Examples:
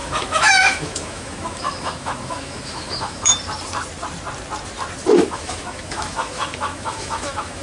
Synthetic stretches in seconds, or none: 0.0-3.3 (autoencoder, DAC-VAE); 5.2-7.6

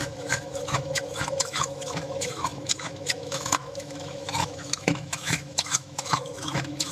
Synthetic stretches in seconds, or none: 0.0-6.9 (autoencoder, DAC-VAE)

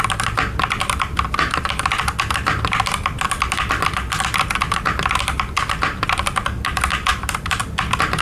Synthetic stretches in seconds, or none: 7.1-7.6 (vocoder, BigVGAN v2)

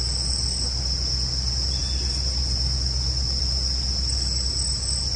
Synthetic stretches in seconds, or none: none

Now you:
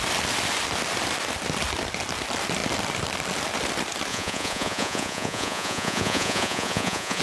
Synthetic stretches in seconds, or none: 4.1-7.2 (vocoder, Vocos)

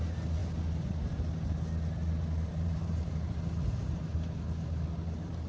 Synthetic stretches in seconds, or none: 2.5-4.0 (vocoder, BigVGAN v2)

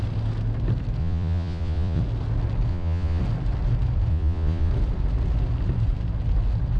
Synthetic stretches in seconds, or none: 1.0-2.0 (vocoder, Vocos); 2.7-3.2; 4.1-4.7